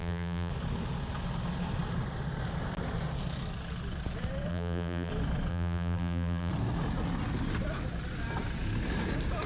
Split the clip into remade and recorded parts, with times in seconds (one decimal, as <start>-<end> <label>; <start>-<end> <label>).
0.0-0.5 remade; 0.5-4.5 recorded; 4.5-5.1 remade; 5.1-5.5 recorded; 5.5-6.5 remade; 6.5-9.5 recorded